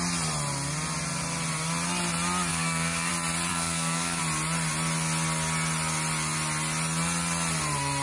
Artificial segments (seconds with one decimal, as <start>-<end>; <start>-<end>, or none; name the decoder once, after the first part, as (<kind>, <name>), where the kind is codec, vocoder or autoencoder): 2.5-3.1 (codec, DAC); 3.5-4.2